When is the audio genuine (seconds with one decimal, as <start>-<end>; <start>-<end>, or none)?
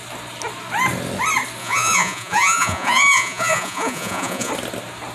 0.0-1.6; 4.5-5.1